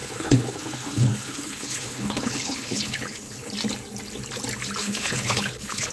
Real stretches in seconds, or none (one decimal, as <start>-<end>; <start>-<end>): 3.5-4.8